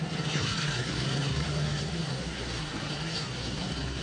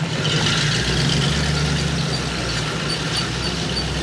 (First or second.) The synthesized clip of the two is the first